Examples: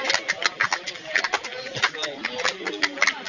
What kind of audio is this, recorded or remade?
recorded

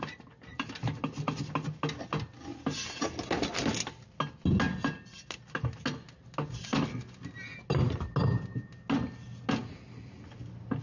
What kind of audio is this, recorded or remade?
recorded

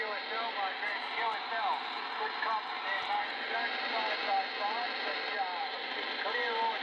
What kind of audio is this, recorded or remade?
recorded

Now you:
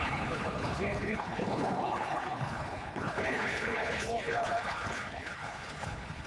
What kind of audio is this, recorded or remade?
remade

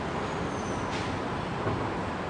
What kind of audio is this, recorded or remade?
recorded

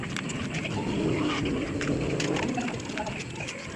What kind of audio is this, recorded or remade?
recorded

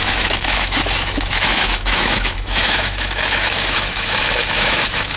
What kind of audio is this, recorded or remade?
remade